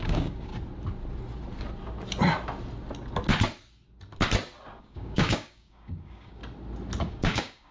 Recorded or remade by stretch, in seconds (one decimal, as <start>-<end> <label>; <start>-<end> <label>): 0.0-0.5 remade; 0.5-4.8 recorded; 4.8-6.4 remade; 6.4-7.0 recorded; 7.0-7.7 remade